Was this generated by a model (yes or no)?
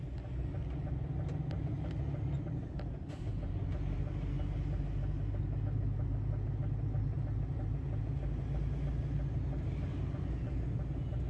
no